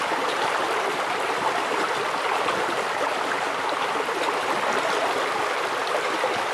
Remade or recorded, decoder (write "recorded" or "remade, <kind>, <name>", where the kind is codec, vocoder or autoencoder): recorded